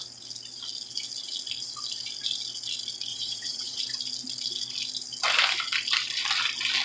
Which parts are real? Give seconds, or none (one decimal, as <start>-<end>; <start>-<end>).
0.0-3.1; 3.8-6.8